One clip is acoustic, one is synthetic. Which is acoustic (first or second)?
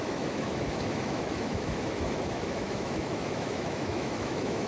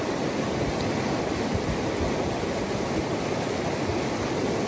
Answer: second